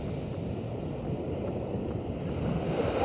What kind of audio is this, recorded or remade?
recorded